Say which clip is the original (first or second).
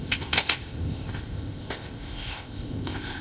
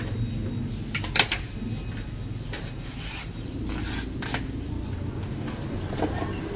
second